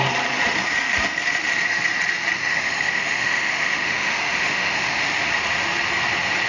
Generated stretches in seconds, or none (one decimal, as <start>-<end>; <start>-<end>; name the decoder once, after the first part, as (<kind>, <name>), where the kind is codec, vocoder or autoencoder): 2.4-5.3 (autoencoder, DAC-VAE)

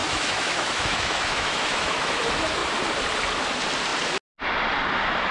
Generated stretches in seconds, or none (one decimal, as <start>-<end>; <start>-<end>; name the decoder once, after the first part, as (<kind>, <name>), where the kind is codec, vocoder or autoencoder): 0.0-2.2 (autoencoder, DAC-VAE)

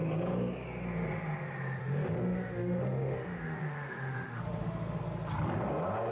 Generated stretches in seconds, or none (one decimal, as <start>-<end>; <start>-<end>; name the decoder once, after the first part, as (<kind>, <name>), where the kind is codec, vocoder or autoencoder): 1.8-5.0 (autoencoder, DAC-VAE)